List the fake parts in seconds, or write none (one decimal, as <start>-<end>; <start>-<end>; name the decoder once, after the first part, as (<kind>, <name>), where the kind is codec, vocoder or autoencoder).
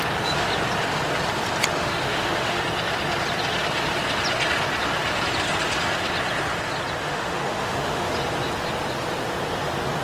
1.8-2.6 (autoencoder, DAC-VAE); 7.0-8.1